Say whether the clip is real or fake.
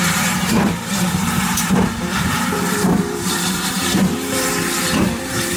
fake